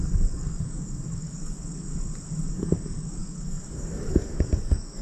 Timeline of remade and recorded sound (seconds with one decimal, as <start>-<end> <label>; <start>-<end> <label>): 0.0-1.9 remade; 1.9-2.5 recorded; 2.5-5.0 remade